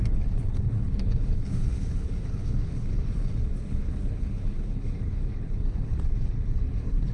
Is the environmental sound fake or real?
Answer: fake